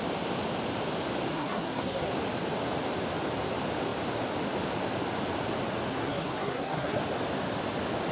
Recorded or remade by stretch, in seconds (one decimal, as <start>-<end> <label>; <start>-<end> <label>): 0.0-1.3 recorded; 1.3-2.1 remade; 2.1-5.9 recorded; 5.9-7.0 remade; 7.0-8.1 recorded